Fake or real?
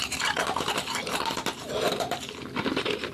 fake